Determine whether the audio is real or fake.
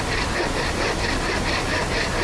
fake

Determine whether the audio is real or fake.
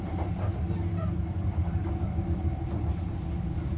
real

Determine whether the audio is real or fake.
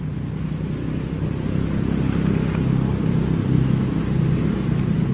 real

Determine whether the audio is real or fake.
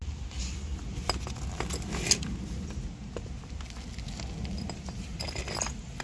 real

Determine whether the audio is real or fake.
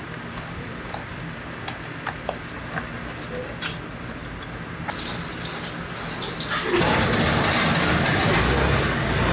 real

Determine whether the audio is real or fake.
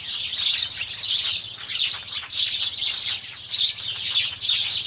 fake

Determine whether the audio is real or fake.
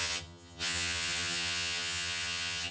fake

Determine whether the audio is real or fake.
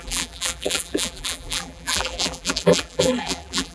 fake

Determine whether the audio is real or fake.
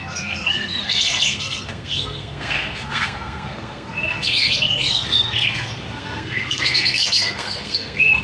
fake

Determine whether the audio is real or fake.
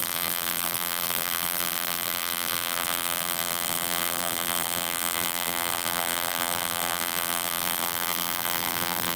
fake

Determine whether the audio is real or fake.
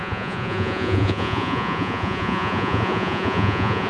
fake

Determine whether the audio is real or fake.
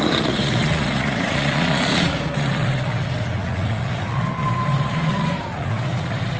fake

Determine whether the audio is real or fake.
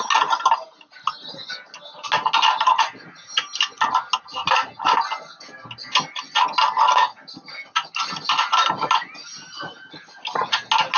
real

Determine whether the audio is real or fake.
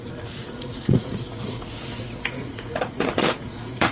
fake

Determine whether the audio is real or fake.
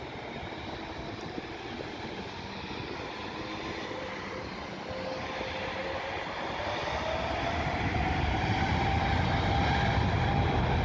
real